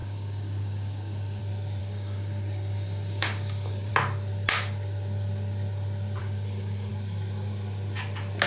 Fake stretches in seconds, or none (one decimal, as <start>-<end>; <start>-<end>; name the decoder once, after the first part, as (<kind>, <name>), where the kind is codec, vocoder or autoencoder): 0.0-1.4 (codec, DAC); 1.8-3.9; 6.2-6.9